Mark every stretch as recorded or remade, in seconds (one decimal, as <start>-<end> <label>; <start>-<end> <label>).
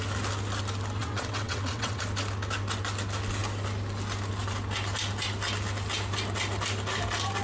0.0-1.0 recorded; 1.0-2.0 remade; 2.0-7.4 recorded